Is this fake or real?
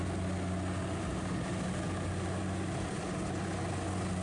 real